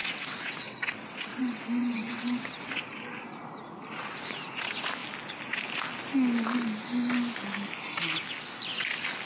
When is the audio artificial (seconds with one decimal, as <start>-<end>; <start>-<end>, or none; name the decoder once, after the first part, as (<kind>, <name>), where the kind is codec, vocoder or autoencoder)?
0.0-2.8 (vocoder, WaveNeXt)